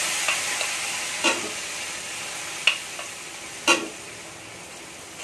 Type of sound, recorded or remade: recorded